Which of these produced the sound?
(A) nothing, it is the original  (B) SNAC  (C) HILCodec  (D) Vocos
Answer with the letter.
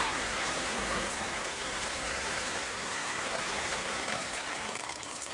B